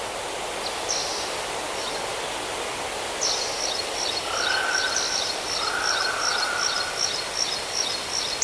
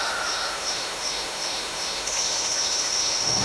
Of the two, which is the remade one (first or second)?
second